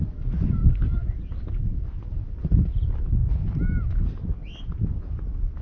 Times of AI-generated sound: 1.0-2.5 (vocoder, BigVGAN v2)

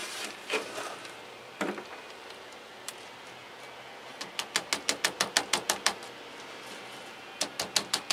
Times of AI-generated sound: 0.0-2.9 (vocoder, BigVGAN v2)

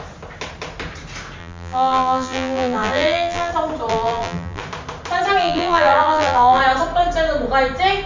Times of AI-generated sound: 1.4-3.5 (vocoder, BigVGAN v2); 3.9-4.6; 5.4-6.6